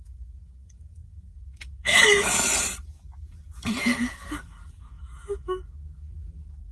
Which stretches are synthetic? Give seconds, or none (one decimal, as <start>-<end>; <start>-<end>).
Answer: 0.0-6.7